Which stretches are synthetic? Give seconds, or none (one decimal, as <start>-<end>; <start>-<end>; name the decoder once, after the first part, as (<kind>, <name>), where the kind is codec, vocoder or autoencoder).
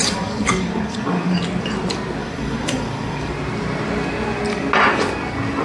0.0-1.4 (codec, DAC); 2.2-3.3